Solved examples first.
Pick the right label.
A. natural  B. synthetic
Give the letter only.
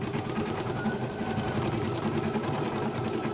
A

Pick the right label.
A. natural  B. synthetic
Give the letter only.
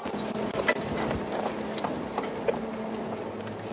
A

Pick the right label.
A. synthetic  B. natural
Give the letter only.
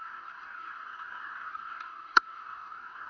A